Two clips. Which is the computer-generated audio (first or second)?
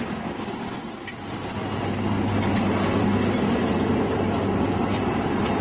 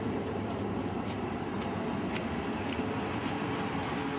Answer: second